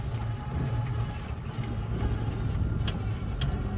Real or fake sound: real